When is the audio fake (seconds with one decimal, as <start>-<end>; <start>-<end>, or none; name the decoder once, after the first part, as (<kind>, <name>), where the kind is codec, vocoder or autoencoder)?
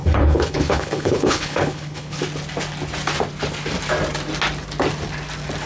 0.0-2.2 (codec, HILCodec)